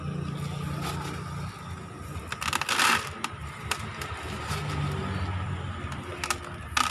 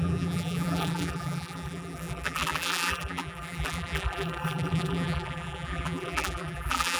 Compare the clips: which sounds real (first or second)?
first